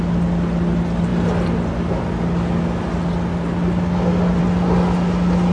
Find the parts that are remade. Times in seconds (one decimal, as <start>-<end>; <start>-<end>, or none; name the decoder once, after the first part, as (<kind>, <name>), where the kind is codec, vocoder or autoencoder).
none